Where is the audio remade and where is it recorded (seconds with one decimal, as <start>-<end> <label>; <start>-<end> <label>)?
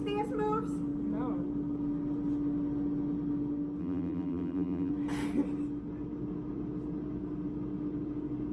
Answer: 0.0-3.8 recorded; 3.8-4.9 remade; 4.9-8.5 recorded